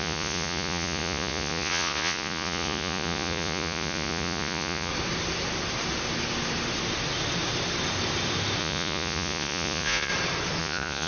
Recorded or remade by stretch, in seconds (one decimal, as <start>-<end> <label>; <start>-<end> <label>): 0.0-4.9 remade; 4.9-8.6 recorded; 8.6-10.1 remade; 10.1-10.6 recorded; 10.6-11.1 remade